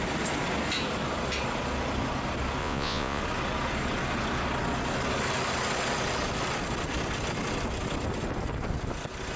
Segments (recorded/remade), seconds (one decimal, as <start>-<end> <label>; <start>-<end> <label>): 0.0-2.6 recorded; 2.6-3.2 remade; 3.2-9.4 recorded